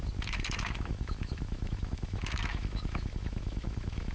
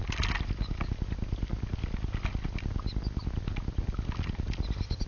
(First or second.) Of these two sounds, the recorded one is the second